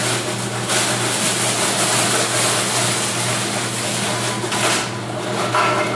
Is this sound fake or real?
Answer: real